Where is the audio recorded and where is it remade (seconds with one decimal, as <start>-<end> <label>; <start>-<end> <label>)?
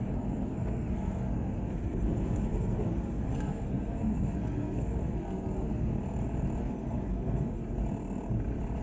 0.0-5.9 remade; 5.9-6.6 recorded; 6.6-7.6 remade; 7.6-8.8 recorded